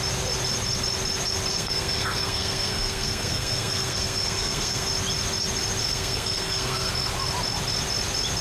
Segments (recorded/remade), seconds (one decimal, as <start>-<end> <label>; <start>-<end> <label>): 0.0-1.5 recorded; 1.5-4.9 remade; 4.9-5.8 recorded; 5.8-6.9 remade; 6.9-8.4 recorded